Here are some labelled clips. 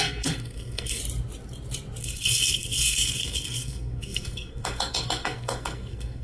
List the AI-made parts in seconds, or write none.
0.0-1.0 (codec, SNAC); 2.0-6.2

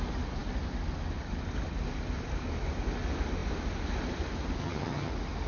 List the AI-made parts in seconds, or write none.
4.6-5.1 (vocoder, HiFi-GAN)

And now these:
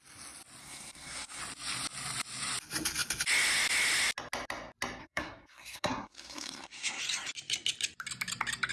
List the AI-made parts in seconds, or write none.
0.6-1.4 (codec, SNAC); 5.0-7.0

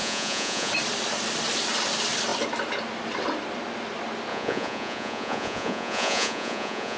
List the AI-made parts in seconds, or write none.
0.0-0.7 (vocoder, Vocos); 4.3-7.0